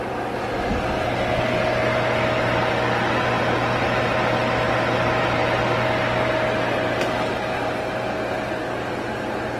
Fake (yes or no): no